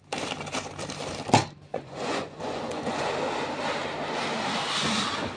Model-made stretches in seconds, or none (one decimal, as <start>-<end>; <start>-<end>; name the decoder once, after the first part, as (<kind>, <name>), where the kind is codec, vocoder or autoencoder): 1.7-3.1 (vocoder, Vocos)